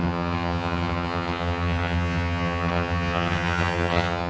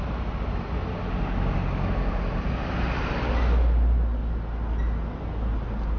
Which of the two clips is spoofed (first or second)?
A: first